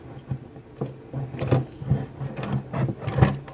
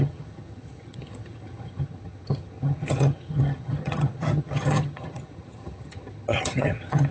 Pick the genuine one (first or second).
first